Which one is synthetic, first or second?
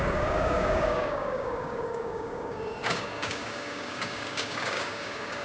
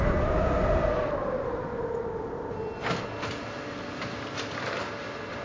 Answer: first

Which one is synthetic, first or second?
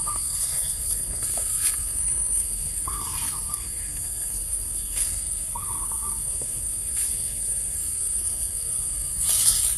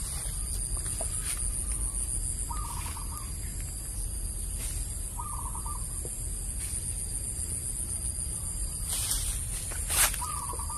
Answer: first